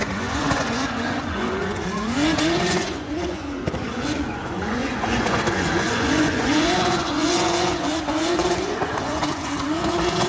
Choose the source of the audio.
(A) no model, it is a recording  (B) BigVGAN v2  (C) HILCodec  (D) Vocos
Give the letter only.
D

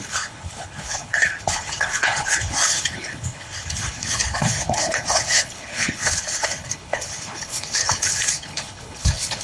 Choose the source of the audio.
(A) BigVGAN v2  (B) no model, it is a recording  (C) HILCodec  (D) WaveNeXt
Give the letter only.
C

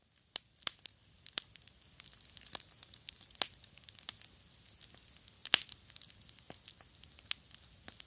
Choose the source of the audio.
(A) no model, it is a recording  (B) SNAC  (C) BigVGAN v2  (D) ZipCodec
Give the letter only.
A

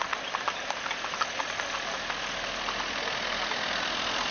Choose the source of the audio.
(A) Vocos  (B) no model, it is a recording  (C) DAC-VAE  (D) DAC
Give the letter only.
B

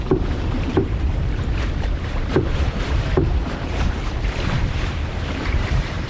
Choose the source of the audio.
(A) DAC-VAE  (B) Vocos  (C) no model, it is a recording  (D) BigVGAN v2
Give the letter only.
D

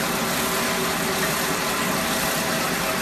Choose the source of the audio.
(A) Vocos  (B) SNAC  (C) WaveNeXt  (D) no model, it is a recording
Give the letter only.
D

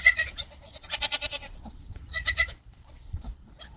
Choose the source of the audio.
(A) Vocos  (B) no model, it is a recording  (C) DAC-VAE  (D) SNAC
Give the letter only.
A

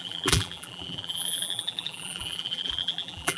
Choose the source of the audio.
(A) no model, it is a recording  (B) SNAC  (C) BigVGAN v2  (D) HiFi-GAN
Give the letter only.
C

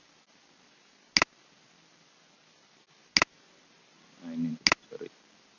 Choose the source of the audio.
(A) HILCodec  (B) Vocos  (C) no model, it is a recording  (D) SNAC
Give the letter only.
C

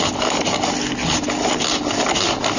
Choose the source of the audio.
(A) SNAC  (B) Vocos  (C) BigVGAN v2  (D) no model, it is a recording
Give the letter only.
D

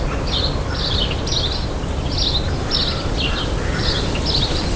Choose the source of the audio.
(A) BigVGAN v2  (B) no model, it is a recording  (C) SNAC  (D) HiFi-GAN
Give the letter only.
B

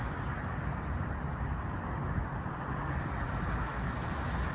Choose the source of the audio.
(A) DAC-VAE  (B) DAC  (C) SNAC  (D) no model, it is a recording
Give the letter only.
D